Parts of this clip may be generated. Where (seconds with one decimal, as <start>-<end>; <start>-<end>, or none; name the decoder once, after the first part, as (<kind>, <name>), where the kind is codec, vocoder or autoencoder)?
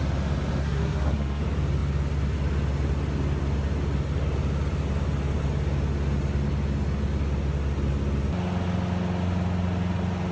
0.6-1.4 (codec, SNAC)